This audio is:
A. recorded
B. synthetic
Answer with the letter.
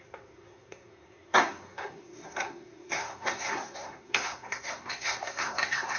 B